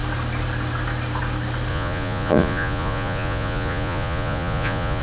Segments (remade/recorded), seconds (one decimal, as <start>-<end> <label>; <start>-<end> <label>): 0.0-1.7 recorded; 1.7-5.0 remade